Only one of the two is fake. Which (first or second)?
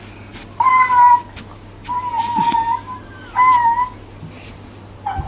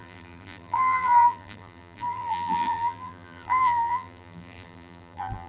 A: second